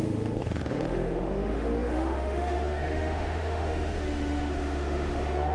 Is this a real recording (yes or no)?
no